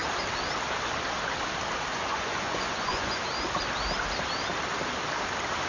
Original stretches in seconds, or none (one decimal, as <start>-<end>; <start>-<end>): 0.0-1.9; 3.2-5.7